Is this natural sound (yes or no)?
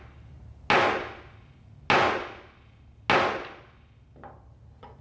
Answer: yes